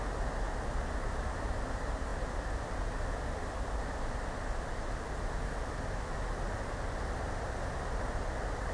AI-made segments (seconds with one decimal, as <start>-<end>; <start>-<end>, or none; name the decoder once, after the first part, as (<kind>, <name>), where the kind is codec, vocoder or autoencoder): none